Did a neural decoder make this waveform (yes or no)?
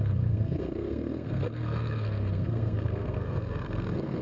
yes